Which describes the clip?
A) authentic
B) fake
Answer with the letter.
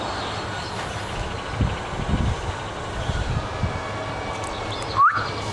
A